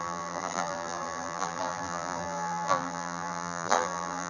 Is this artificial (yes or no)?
yes